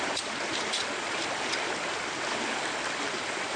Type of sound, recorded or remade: remade